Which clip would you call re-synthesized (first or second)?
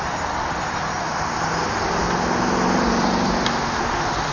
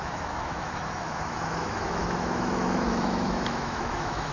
second